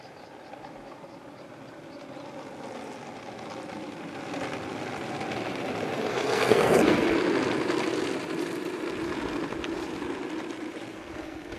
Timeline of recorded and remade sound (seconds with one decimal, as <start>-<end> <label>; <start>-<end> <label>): 0.0-6.1 recorded; 6.1-7.1 remade; 7.1-10.9 recorded; 10.9-11.6 remade